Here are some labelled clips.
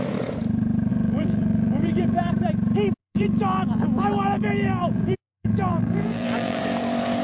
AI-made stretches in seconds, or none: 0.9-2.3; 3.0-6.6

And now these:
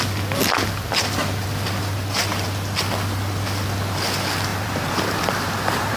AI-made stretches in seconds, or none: 4.5-6.0

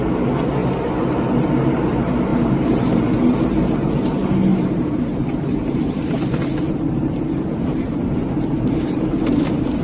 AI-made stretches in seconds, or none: 0.6-1.5; 4.5-9.2

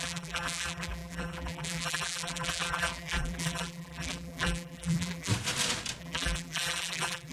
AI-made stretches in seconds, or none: 0.0-5.3; 6.0-7.3

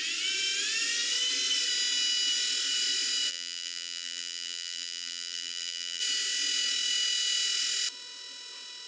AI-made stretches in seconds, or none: 3.3-6.0